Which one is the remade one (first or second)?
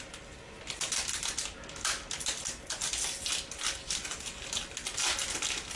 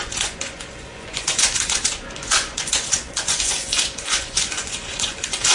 second